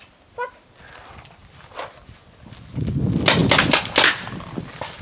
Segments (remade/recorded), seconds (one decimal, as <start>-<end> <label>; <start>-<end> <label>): 0.0-5.0 recorded